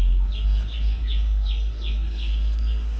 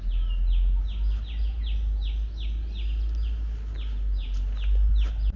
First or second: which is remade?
first